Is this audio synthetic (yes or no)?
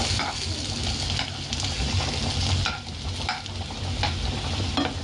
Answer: no